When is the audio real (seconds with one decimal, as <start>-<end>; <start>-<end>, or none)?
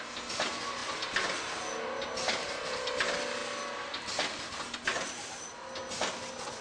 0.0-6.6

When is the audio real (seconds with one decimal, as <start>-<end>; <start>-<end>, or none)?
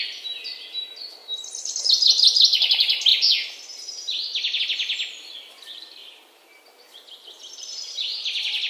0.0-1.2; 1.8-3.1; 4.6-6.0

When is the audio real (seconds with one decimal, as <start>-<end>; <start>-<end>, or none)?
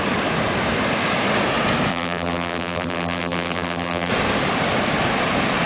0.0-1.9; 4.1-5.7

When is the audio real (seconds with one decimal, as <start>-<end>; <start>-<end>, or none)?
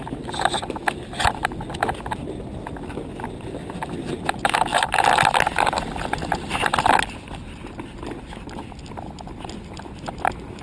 0.0-4.7; 6.8-10.6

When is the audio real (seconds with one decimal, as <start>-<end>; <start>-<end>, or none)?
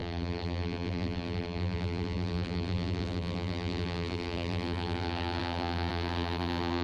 none